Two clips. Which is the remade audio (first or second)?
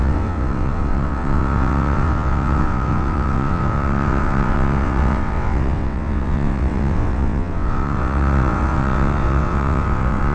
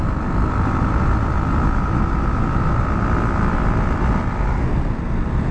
first